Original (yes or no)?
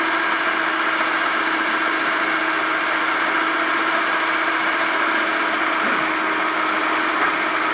yes